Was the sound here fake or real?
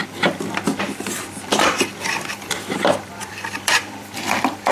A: fake